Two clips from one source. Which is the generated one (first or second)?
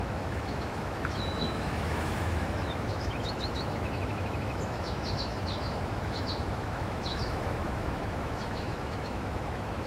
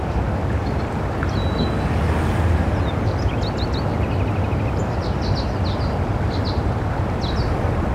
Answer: first